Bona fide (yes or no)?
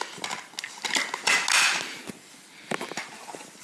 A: yes